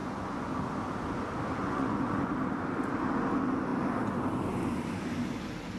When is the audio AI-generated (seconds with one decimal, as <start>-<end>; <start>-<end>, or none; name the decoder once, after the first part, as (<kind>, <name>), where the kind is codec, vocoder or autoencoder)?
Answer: 0.0-0.5 (vocoder, Vocos); 1.6-2.3